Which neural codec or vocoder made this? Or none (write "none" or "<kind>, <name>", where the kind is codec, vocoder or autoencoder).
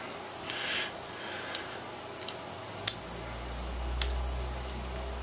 none